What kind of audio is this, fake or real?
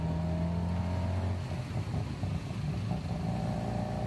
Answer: real